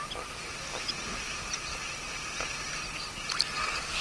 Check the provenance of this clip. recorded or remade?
recorded